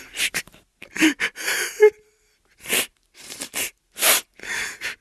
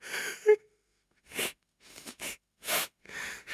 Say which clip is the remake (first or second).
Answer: second